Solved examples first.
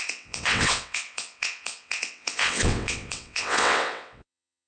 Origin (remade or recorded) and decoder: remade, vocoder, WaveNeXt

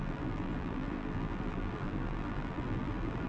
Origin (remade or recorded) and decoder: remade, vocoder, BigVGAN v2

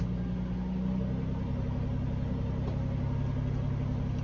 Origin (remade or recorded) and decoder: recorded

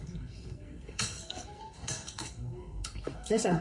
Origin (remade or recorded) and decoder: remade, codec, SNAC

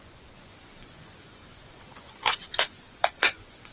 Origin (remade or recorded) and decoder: remade, vocoder, Vocos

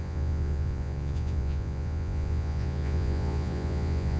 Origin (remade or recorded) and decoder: remade, vocoder, Vocos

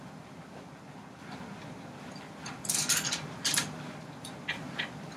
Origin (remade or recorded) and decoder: recorded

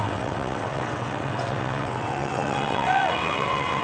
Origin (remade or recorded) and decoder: remade, vocoder, WaveNeXt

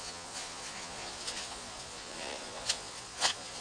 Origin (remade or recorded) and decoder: remade, vocoder, Vocos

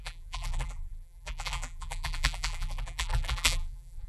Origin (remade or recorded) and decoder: remade, vocoder, BigVGAN v2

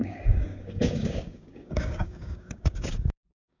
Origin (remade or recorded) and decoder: remade, codec, DAC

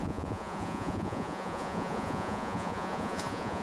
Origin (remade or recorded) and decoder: remade, vocoder, Vocos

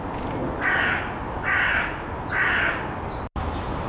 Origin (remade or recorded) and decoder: recorded